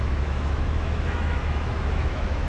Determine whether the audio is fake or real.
fake